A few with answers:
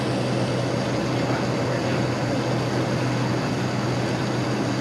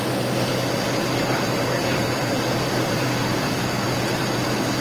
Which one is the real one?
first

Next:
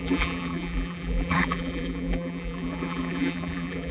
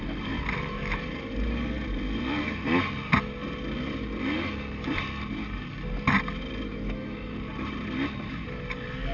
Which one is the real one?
second